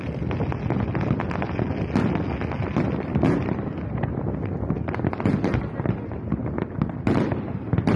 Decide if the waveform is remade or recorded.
recorded